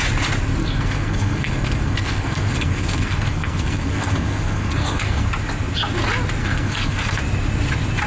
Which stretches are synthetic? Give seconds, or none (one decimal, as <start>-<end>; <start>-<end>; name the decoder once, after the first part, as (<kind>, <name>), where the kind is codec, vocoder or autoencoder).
0.6-5.3 (codec, SNAC); 6.4-7.2